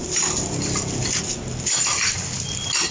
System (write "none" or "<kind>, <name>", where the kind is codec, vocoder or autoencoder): none